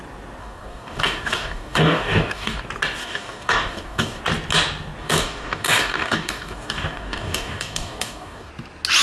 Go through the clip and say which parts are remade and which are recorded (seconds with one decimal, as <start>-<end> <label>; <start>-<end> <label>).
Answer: 0.0-0.4 recorded; 0.4-2.6 remade; 2.6-3.0 recorded; 3.0-4.2 remade; 4.2-5.0 recorded; 5.0-8.5 remade; 8.5-9.0 recorded